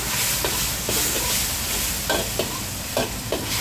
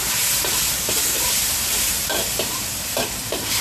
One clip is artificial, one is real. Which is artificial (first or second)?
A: second